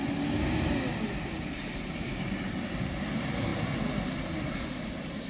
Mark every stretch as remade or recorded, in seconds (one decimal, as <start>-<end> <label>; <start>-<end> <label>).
0.0-3.0 recorded; 3.0-3.5 remade; 3.5-4.1 recorded; 4.1-5.3 remade

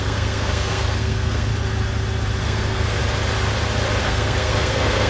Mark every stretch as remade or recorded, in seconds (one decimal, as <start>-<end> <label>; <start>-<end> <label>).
0.0-1.5 remade; 1.5-2.4 recorded; 2.4-3.0 remade; 3.0-4.0 recorded; 4.0-5.1 remade

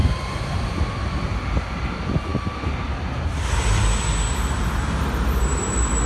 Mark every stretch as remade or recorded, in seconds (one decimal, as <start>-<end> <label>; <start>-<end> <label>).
0.0-0.6 remade; 0.6-6.1 recorded

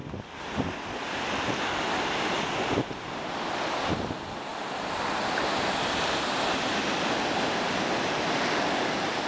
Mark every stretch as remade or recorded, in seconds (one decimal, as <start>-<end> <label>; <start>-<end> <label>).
0.0-9.3 recorded

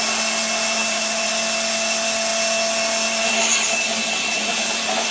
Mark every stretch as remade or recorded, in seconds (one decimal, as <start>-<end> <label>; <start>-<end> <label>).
0.0-0.8 recorded; 0.8-1.3 remade; 1.3-5.1 recorded